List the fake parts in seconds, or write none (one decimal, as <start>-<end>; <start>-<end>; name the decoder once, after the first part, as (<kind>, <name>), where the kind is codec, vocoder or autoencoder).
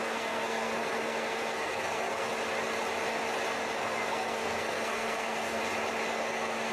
0.0-2.3 (codec, SNAC); 3.7-5.6; 6.1-6.7